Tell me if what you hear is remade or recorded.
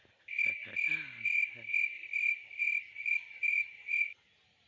recorded